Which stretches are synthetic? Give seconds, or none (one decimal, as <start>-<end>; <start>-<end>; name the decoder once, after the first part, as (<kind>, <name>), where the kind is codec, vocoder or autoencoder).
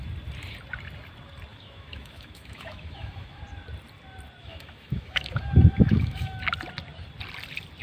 1.5-3.4 (autoencoder, DAC-VAE); 4.4-6.4